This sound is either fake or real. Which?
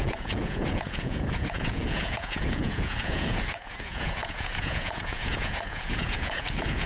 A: fake